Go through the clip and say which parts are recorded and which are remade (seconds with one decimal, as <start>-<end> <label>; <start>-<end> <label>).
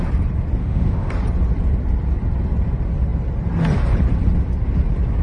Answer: 0.0-0.6 recorded; 0.6-1.1 remade; 1.1-5.2 recorded